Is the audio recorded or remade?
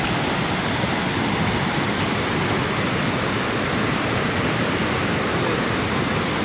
recorded